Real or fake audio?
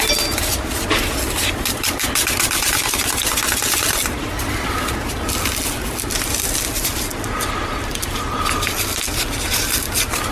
real